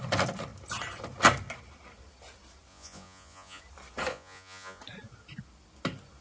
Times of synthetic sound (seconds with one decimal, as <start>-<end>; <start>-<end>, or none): 2.7-3.6; 4.1-4.8

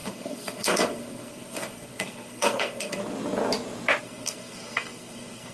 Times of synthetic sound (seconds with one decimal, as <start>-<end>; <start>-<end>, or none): 0.0-3.0; 4.0-5.5

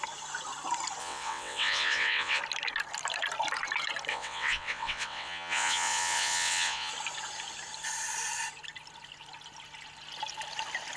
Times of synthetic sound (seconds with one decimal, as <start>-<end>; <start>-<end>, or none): 1.0-2.4; 4.1-6.9

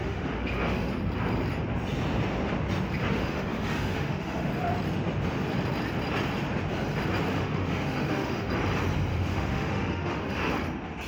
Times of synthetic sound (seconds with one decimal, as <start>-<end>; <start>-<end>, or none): 0.0-0.9; 3.1-4.5; 7.3-8.5; 9.1-10.5

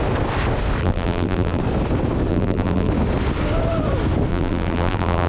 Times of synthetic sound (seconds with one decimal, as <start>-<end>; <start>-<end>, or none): 0.8-1.6; 2.3-2.9; 4.3-5.3

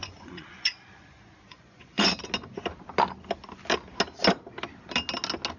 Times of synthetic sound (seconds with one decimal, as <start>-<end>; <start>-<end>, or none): 0.0-2.2